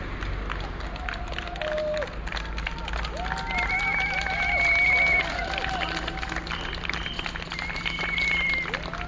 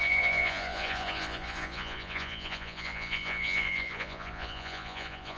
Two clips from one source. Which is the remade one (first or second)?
second